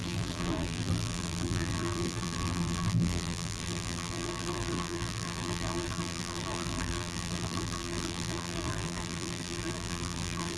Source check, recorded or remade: remade